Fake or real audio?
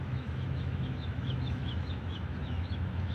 fake